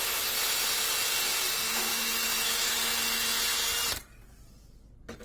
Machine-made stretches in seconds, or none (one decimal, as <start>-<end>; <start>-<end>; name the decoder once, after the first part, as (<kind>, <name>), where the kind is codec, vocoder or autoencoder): 1.9-2.7 (autoencoder, DAC-VAE)